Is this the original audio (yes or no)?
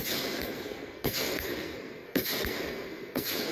no